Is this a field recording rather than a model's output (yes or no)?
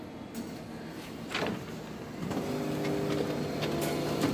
yes